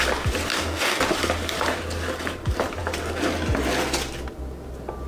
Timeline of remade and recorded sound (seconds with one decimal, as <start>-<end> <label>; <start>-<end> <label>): 0.0-0.5 recorded; 0.5-1.0 remade; 1.0-5.1 recorded